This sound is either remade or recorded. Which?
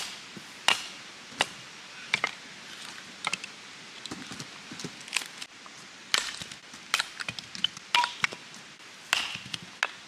recorded